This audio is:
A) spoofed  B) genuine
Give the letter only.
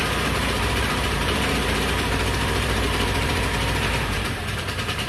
A